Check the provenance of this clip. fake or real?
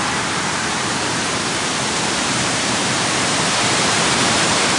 fake